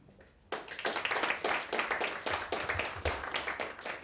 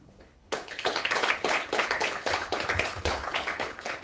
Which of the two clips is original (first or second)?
first